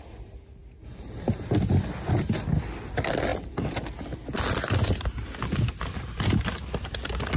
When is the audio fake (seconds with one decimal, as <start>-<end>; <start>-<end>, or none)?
none